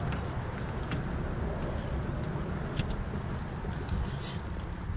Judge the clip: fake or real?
real